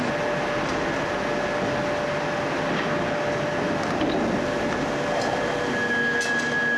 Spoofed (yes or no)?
no